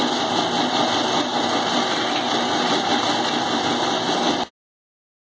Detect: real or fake real